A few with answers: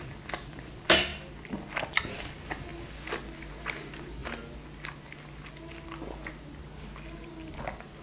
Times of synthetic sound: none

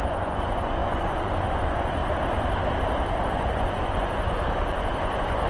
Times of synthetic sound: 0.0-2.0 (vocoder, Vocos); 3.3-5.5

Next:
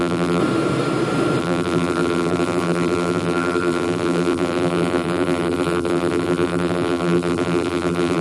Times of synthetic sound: 0.0-0.4 (vocoder, BigVGAN v2); 1.4-8.2